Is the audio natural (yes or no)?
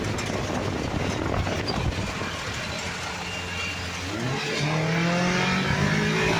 yes